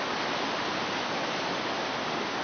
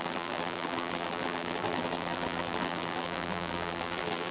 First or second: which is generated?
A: second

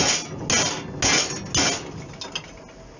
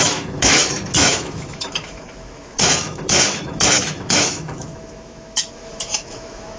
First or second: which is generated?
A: second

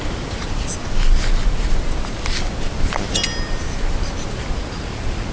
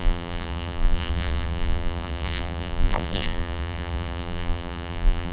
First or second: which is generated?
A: second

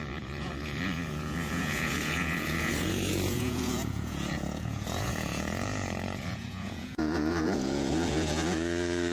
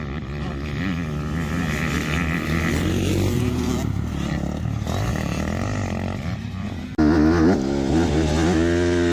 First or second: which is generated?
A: first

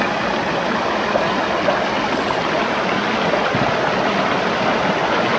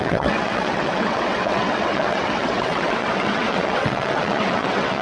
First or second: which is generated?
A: second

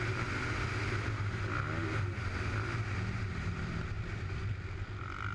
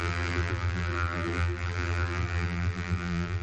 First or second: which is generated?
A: second